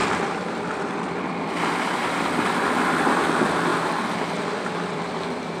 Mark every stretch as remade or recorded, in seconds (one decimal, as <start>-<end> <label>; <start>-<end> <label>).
0.0-3.7 remade; 3.7-4.4 recorded; 4.4-5.6 remade